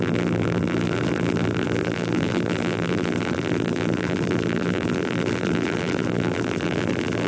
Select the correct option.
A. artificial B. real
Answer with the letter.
A